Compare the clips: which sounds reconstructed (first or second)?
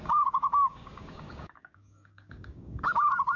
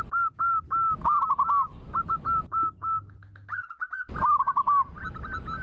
first